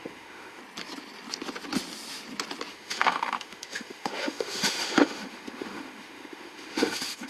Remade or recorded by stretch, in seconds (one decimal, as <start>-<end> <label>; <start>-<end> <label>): 0.0-0.6 remade; 0.6-2.7 recorded; 2.7-7.3 remade